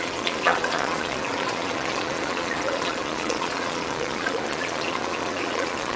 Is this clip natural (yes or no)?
no